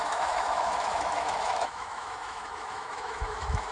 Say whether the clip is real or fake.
fake